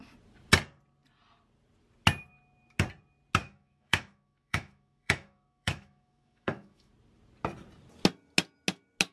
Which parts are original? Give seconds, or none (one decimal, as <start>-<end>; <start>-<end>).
0.0-3.4; 6.9-9.1